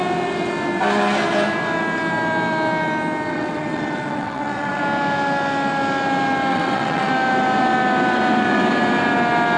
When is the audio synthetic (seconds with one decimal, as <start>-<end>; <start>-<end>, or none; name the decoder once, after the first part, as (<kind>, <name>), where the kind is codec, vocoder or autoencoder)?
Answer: 3.3-4.8 (vocoder, WaveNeXt); 6.5-7.1